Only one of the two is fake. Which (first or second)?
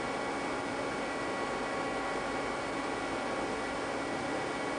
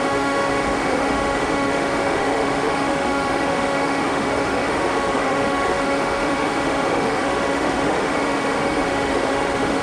second